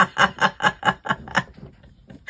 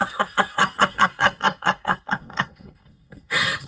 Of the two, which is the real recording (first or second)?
first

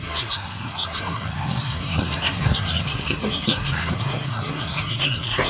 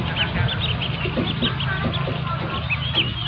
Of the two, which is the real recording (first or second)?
second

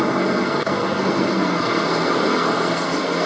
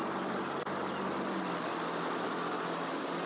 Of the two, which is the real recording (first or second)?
second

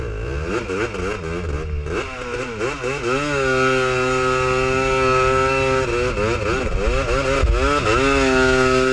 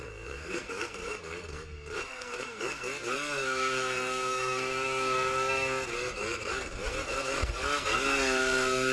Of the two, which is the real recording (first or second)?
first